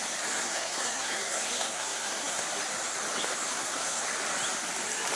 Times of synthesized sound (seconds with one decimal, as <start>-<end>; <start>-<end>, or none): 0.4-2.4; 3.5-4.0